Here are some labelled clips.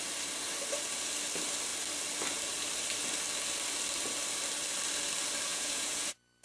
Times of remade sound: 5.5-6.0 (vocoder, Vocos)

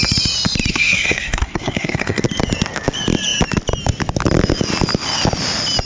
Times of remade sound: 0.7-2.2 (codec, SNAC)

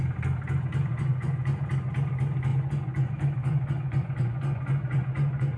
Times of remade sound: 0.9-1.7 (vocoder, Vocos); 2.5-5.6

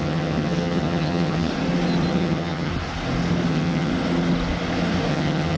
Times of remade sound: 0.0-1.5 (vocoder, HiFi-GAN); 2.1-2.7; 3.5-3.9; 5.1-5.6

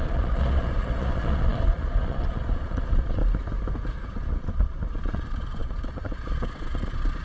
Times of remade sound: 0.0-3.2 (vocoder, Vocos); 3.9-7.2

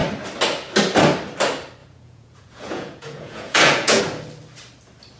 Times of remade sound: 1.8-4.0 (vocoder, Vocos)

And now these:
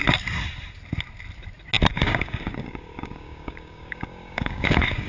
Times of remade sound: 1.9-5.1 (codec, DAC)

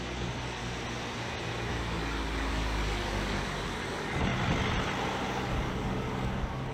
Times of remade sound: 0.0-0.6 (codec, DAC); 1.7-4.3; 5.3-6.7